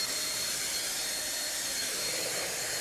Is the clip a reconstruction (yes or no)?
yes